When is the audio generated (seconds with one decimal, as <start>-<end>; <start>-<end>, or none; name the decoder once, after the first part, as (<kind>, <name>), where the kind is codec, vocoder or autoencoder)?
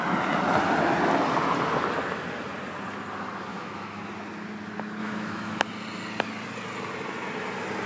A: 3.5-4.1 (autoencoder, DAC-VAE); 5.0-5.6